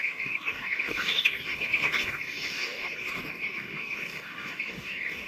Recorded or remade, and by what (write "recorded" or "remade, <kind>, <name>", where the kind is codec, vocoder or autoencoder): remade, codec, DAC